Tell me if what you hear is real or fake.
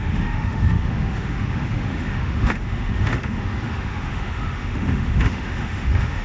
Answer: fake